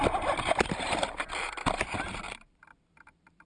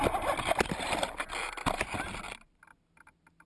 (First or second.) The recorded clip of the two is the second